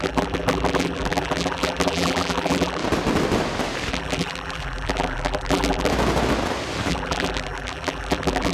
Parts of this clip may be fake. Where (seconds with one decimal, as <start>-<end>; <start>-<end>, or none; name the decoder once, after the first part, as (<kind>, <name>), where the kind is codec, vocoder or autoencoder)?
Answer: 0.0-2.8 (vocoder, BigVGAN v2); 3.9-5.9; 6.9-8.5